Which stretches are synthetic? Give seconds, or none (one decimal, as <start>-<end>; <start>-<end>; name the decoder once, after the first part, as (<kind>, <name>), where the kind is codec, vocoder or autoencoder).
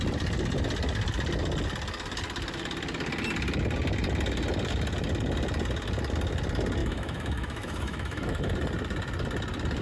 6.8-8.4 (autoencoder, DAC-VAE)